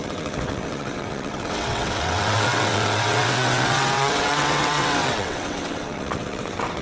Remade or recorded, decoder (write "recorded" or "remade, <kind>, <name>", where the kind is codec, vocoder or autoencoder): remade, vocoder, WaveNeXt